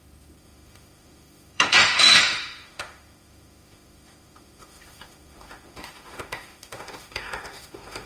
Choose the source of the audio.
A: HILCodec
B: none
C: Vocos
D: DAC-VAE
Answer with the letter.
D